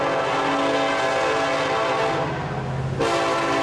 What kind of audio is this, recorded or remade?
recorded